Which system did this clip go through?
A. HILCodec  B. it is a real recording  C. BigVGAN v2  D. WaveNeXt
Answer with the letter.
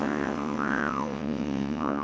D